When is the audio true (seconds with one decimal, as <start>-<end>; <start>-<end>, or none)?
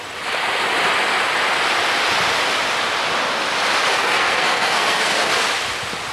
0.0-3.9; 5.3-6.1